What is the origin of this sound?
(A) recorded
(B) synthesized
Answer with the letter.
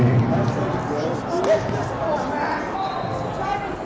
A